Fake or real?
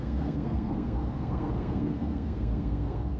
fake